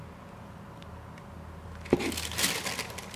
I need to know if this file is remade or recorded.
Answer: recorded